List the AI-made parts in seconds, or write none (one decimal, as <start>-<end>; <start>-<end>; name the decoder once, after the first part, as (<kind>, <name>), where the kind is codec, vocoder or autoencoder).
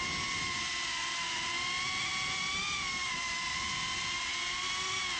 none